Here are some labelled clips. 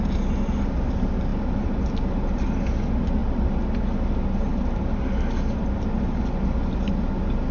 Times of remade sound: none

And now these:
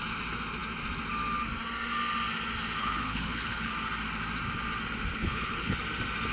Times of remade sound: 2.8-3.7; 5.2-5.8

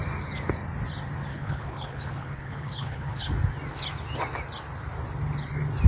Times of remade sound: 1.3-3.3

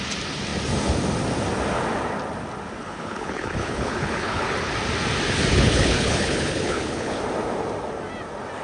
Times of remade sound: 2.8-4.7; 5.5-7.2

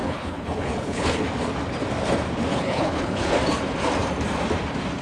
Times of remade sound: 0.0-1.2; 2.5-3.3